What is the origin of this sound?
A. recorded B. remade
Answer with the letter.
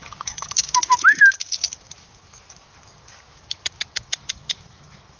B